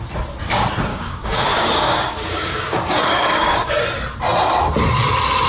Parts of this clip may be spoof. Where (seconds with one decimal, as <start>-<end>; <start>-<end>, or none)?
0.9-3.7